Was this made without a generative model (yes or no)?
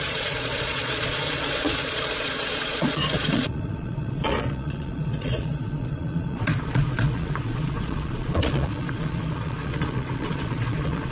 no